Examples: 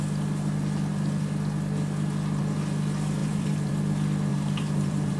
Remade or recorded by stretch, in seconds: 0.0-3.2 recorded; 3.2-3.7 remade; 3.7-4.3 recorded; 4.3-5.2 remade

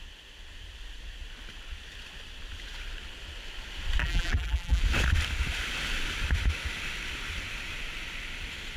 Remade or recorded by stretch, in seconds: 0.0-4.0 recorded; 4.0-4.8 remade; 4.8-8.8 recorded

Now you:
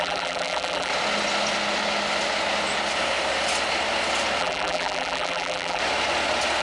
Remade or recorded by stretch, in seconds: 0.0-0.9 remade; 0.9-4.4 recorded; 4.4-5.8 remade; 5.8-6.6 recorded